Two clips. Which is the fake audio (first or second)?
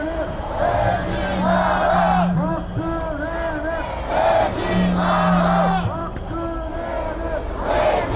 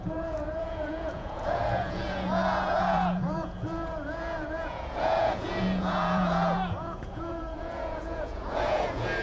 second